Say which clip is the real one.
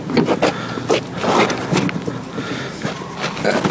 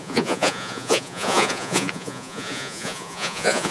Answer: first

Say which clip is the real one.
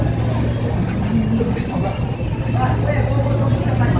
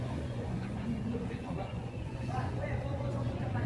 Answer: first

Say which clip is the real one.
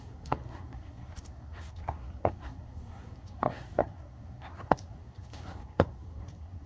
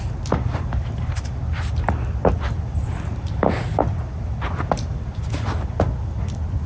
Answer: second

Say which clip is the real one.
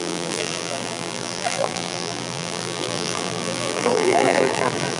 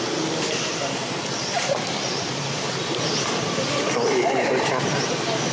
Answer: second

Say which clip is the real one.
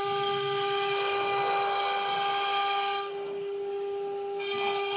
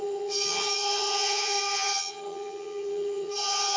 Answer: first